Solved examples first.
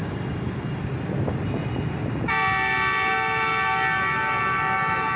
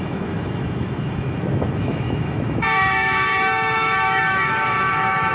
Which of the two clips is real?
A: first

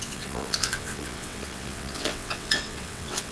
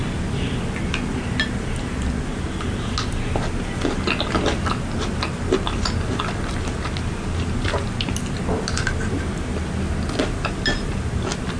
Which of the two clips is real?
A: second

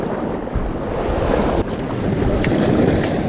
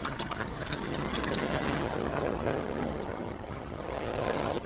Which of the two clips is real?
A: first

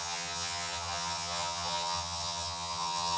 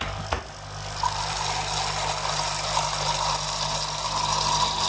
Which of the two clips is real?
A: second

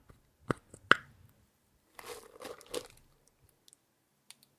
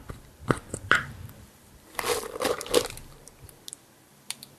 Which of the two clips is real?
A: first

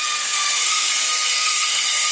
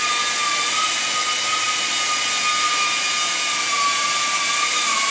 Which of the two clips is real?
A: second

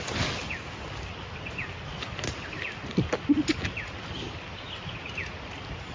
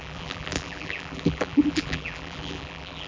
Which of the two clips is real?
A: first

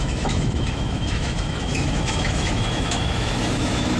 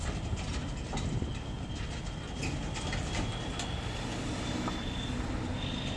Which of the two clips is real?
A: second